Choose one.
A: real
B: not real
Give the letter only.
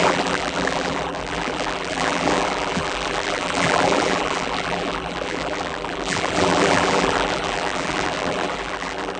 B